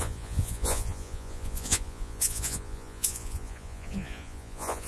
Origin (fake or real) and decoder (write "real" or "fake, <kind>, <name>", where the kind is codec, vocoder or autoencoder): fake, vocoder, Vocos